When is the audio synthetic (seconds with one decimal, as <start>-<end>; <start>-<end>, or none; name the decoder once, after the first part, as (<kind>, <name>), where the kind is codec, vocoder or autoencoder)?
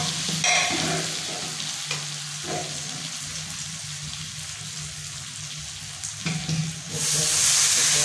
none